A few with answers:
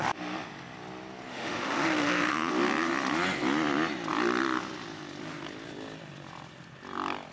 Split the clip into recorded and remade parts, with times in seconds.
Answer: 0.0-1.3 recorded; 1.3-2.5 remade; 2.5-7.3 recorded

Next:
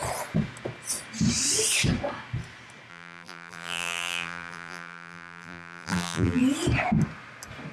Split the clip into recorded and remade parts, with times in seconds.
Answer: 0.0-2.9 recorded; 2.9-6.4 remade; 6.4-7.7 recorded

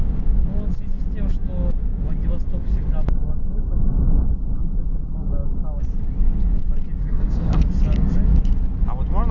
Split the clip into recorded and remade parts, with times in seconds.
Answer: 0.0-7.0 recorded; 7.0-7.6 remade; 7.6-9.3 recorded

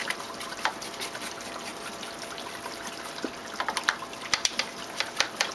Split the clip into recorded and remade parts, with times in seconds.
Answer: 0.0-1.7 remade; 1.7-2.5 recorded; 2.5-3.4 remade; 3.4-4.1 recorded; 4.1-5.5 remade

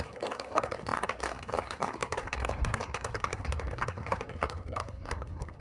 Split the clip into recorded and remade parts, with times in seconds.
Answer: 0.0-5.6 remade

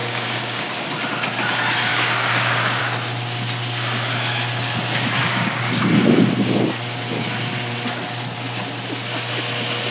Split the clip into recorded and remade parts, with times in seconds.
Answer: 0.0-0.7 remade; 0.7-1.9 recorded; 1.9-2.8 remade; 2.8-5.2 recorded; 5.2-5.8 remade; 5.8-9.9 recorded

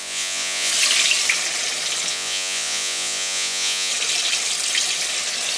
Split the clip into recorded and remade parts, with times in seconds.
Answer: 0.0-0.7 remade; 0.7-2.1 recorded; 2.1-3.9 remade; 3.9-5.6 recorded